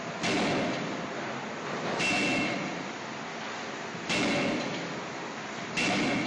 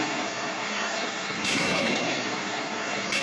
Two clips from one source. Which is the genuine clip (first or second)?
first